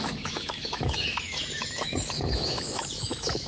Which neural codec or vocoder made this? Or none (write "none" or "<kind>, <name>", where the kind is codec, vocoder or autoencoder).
autoencoder, DAC-VAE